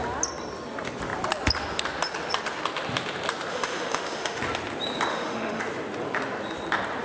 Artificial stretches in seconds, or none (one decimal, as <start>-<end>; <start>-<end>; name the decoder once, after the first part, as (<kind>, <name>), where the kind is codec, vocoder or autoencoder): 3.5-4.4 (autoencoder, DAC-VAE); 5.1-5.6